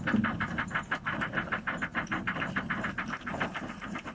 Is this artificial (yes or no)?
yes